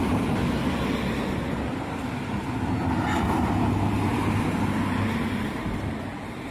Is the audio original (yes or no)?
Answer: yes